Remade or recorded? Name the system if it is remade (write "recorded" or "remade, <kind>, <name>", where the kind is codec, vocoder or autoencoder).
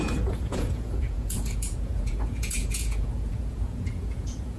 remade, vocoder, Vocos